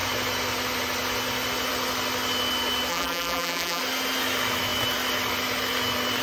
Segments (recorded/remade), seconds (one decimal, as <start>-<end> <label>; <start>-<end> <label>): 0.0-2.9 recorded; 2.9-3.8 remade; 3.8-6.2 recorded